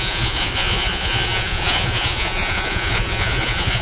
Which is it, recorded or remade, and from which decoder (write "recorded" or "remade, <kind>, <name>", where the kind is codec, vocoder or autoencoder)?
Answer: remade, vocoder, Vocos